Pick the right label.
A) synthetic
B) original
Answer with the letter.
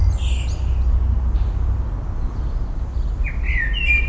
B